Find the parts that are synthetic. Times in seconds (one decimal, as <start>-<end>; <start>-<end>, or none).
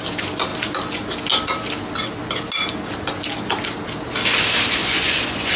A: 4.8-5.6